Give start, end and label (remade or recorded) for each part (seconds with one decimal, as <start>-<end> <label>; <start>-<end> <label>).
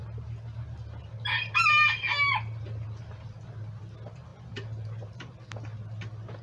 0.0-6.4 recorded